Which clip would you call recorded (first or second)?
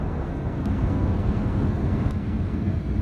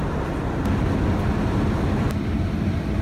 second